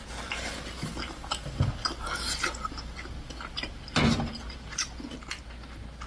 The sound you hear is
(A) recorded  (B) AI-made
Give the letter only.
A